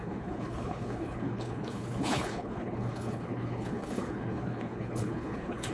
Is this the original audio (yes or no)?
no